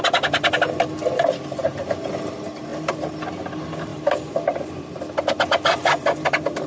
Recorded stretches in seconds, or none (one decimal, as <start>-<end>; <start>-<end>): 0.0-1.6; 2.1-3.9; 5.0-6.7